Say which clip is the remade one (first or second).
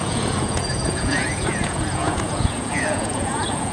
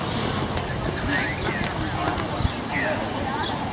first